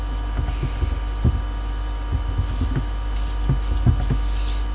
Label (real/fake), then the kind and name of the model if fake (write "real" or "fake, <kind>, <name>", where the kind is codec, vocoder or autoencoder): real